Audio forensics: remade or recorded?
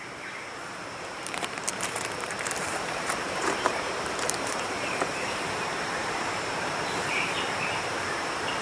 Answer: remade